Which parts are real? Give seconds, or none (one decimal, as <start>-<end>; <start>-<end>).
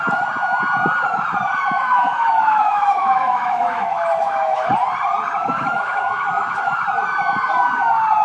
0.0-1.5; 4.7-5.4; 6.6-8.2